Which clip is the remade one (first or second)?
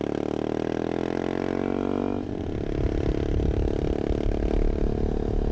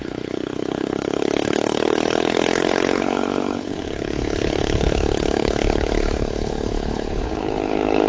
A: second